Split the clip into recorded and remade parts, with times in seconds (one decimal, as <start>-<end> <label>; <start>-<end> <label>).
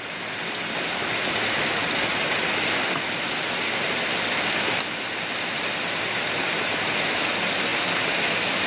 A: 0.0-8.7 recorded